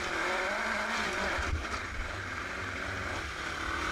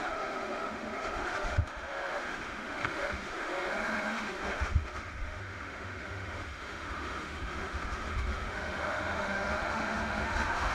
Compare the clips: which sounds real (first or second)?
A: first